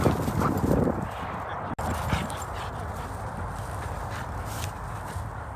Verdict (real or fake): real